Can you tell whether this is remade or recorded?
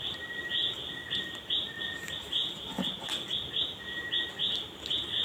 recorded